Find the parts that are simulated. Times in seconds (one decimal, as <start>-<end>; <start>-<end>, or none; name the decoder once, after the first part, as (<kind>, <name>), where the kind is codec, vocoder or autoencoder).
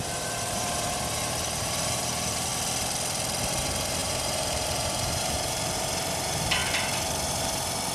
0.0-2.5 (vocoder, BigVGAN v2); 3.6-6.6; 7.3-7.9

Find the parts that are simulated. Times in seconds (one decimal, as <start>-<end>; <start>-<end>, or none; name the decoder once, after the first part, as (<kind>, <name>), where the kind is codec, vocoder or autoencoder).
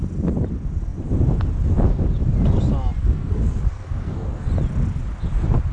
3.0-4.5 (codec, SNAC)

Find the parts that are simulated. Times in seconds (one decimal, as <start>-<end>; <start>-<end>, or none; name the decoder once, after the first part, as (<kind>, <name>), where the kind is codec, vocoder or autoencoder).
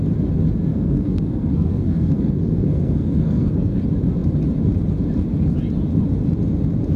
0.7-3.8 (codec, SNAC)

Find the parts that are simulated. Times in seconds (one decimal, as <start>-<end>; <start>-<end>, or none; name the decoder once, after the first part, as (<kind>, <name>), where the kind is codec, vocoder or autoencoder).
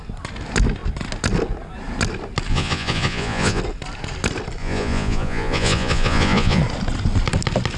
2.5-3.6 (vocoder, Vocos); 4.6-6.6